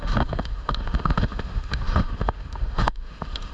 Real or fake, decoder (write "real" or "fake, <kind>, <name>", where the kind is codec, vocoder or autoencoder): fake, autoencoder, DAC-VAE